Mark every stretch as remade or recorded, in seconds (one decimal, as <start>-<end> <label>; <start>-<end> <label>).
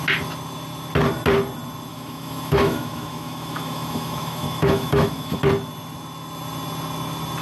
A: 0.0-1.9 recorded; 1.9-5.4 remade; 5.4-7.4 recorded